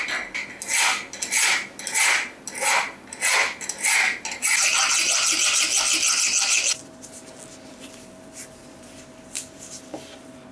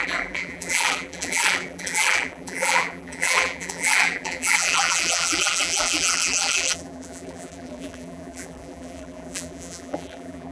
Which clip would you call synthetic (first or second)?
second